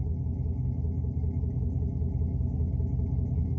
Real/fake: real